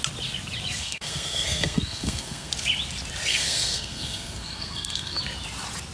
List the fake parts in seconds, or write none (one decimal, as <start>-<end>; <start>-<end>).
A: 0.8-2.5; 3.3-5.2